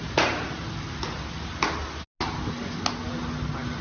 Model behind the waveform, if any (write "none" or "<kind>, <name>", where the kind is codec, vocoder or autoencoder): none